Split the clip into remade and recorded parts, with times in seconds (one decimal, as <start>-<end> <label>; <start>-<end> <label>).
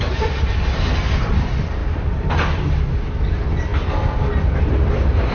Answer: 0.0-5.3 recorded